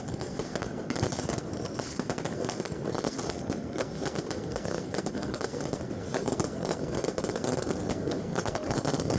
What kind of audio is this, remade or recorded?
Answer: remade